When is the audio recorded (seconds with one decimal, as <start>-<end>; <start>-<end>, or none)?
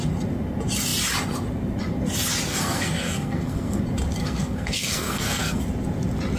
0.0-2.5; 3.8-4.2; 5.6-6.4